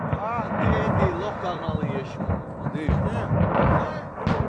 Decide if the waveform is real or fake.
real